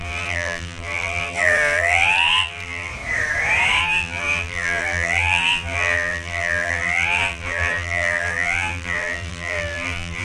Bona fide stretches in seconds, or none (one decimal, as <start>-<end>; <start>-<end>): 2.9-3.8